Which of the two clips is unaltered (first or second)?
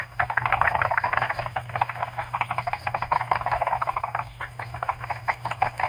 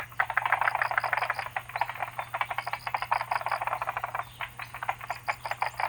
second